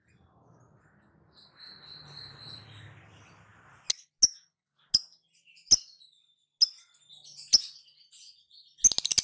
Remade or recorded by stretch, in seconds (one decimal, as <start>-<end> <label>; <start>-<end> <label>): 0.0-9.2 recorded